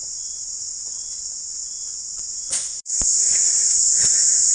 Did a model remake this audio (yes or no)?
yes